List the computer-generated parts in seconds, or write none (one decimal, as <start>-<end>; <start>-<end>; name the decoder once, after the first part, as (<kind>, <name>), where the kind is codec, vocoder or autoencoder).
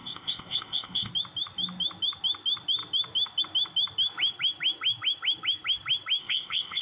0.0-1.1 (codec, ZipCodec); 6.2-6.8